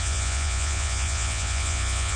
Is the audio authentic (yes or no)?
no